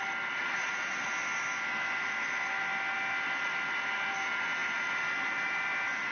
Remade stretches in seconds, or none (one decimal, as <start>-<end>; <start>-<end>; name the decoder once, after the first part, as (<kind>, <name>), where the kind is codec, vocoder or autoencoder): 0.4-1.1 (vocoder, Vocos)